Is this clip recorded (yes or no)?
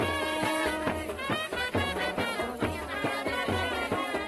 no